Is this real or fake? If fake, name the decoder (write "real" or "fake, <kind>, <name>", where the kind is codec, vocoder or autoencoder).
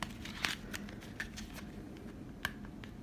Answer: real